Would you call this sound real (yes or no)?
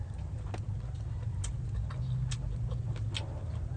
yes